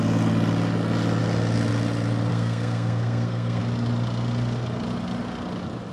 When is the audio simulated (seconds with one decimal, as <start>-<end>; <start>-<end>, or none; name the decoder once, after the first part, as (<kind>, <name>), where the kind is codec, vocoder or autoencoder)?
2.3-3.6 (codec, SNAC)